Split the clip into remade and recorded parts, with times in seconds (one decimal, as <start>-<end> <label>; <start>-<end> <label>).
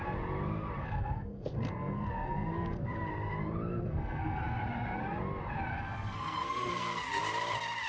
0.0-0.8 recorded; 0.8-3.1 remade; 3.1-3.7 recorded; 3.7-4.4 remade; 4.4-5.7 recorded; 5.7-7.2 remade; 7.2-7.9 recorded